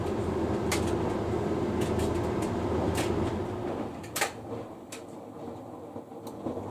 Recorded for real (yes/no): yes